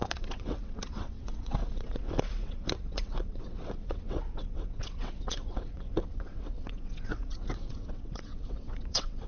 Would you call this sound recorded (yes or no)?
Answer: no